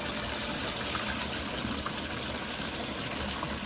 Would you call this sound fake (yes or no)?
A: no